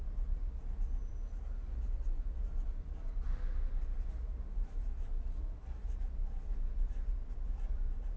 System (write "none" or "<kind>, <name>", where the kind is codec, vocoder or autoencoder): none